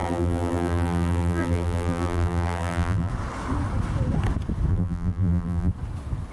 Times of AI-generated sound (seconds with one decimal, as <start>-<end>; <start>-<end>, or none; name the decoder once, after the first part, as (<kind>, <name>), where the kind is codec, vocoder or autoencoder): 0.0-3.1 (vocoder, BigVGAN v2); 4.7-5.7